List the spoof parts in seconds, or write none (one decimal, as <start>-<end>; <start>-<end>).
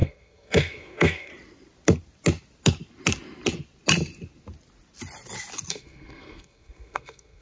0.0-1.3; 5.7-7.4